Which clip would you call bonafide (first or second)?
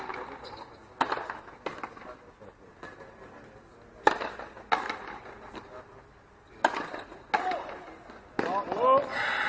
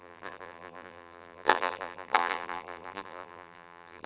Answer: first